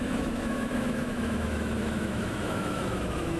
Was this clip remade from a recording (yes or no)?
yes